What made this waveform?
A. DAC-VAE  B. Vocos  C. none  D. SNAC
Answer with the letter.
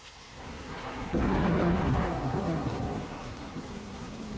D